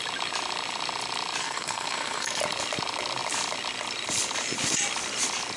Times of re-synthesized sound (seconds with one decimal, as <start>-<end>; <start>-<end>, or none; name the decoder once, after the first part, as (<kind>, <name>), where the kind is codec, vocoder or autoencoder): 1.4-2.4 (codec, SNAC)